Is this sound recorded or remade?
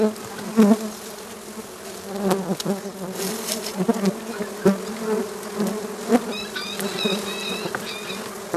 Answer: recorded